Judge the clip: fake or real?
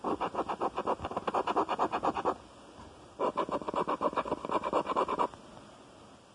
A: real